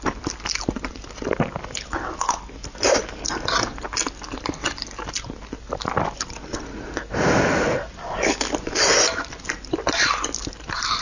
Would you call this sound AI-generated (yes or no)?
no